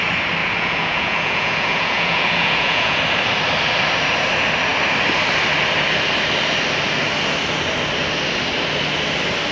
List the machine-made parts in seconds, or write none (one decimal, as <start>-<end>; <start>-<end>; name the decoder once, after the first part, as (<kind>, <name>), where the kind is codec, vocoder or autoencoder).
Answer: 0.4-3.0 (vocoder, Vocos)